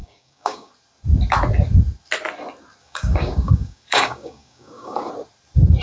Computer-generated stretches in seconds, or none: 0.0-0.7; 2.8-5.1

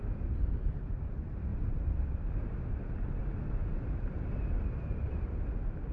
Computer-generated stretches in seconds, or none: 1.5-3.2; 3.6-5.5

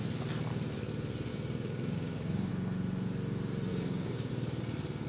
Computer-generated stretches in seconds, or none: 1.3-2.5; 3.7-4.3

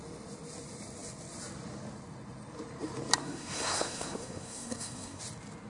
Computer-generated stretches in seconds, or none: 3.2-5.2

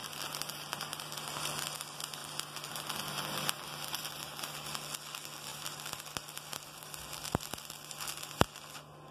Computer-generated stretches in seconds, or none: 0.0-1.2; 5.5-7.0

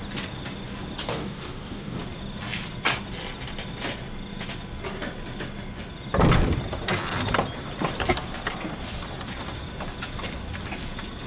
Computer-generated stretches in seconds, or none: 1.1-2.0

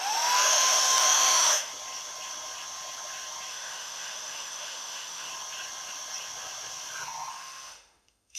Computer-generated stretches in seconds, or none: 0.0-1.7; 3.5-5.3; 7.3-8.4